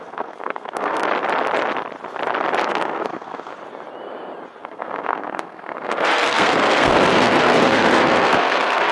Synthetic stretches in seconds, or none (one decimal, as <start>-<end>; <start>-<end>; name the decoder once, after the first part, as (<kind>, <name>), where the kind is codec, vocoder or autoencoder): 0.0-1.0 (codec, SNAC); 2.7-3.5; 4.6-8.9